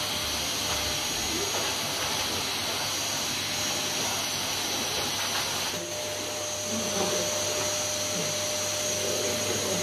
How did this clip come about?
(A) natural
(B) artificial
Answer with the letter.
A